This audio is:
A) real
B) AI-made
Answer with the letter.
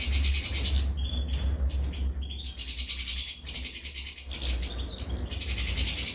A